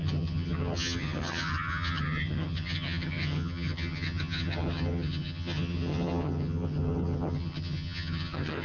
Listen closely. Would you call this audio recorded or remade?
remade